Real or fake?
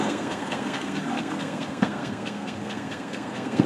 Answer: fake